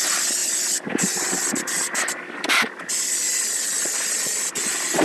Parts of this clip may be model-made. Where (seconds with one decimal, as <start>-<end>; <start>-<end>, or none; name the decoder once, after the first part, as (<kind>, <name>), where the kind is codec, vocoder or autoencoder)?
none